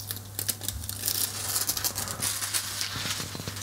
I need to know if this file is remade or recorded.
recorded